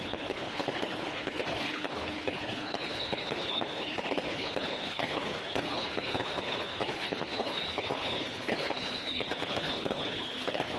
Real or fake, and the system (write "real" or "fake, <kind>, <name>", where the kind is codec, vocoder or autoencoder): fake, codec, HILCodec